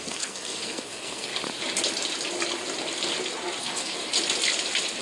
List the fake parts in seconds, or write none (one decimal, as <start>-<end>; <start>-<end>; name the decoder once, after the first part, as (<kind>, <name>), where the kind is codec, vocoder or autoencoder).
0.0-1.3 (codec, SNAC); 3.6-4.0